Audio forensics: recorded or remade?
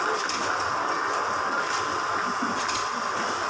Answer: recorded